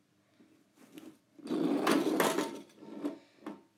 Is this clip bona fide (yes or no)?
yes